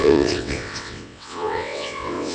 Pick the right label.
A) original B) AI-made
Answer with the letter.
B